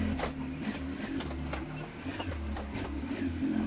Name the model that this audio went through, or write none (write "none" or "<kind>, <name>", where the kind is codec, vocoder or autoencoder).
none